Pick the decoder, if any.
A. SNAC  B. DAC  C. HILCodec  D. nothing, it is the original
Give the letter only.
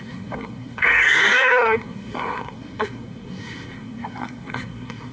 A